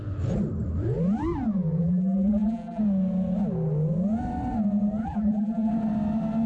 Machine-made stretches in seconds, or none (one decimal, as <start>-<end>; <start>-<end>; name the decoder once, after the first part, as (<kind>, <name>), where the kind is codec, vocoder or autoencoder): 1.8-2.8 (vocoder, BigVGAN v2); 5.0-5.7